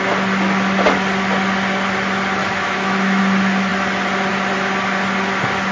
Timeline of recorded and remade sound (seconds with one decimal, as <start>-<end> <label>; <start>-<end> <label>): 0.0-2.4 recorded; 2.4-3.2 remade; 3.2-5.7 recorded